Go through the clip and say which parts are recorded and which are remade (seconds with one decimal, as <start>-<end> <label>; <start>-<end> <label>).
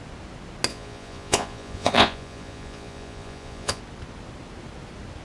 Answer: 0.0-0.7 recorded; 0.7-3.8 remade; 3.8-5.2 recorded